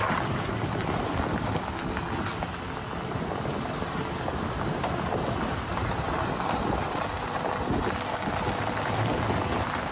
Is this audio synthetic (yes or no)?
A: no